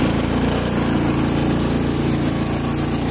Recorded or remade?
recorded